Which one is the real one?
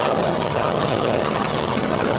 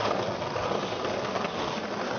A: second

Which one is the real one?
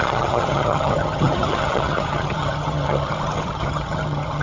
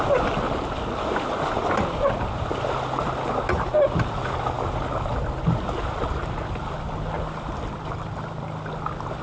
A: second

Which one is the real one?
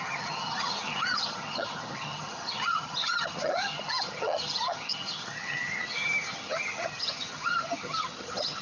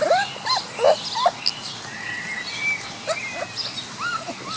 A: second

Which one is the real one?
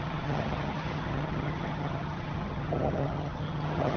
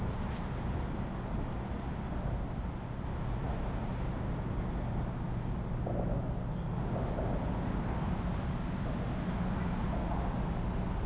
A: second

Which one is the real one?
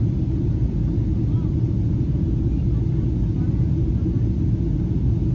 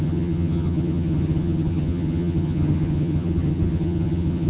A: first